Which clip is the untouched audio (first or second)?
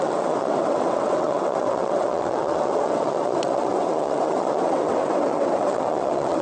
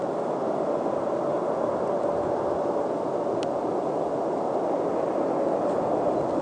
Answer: second